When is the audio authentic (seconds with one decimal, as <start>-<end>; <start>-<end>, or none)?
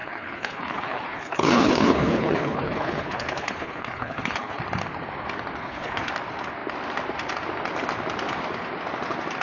4.6-5.6; 6.1-9.4